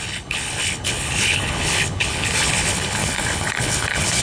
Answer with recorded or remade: remade